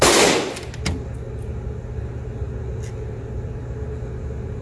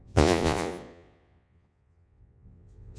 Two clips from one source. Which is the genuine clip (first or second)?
first